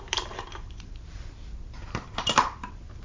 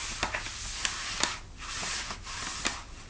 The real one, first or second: second